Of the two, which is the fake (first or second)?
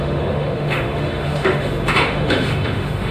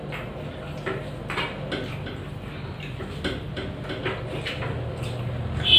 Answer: first